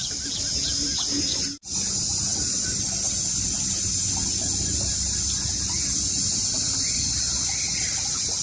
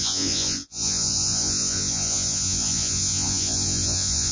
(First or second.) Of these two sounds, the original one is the first